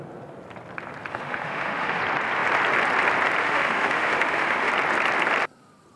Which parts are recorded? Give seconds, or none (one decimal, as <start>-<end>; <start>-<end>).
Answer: 0.0-1.1; 2.0-3.4; 4.7-6.0